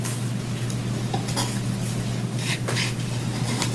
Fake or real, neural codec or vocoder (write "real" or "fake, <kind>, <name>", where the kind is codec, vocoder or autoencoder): real